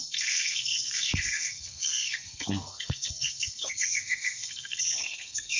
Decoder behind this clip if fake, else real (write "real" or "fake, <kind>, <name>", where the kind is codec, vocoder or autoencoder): fake, codec, SNAC